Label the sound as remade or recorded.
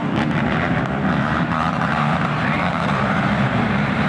remade